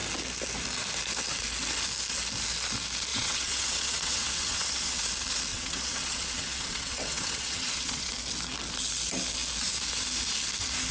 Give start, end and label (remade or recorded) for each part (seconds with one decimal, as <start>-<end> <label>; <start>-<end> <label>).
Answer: 0.0-3.1 recorded; 3.1-5.0 remade; 5.0-5.5 recorded; 5.5-8.1 remade; 8.1-10.9 recorded